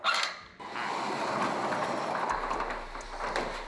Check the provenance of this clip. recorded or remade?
recorded